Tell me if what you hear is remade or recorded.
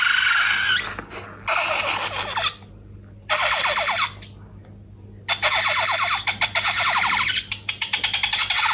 recorded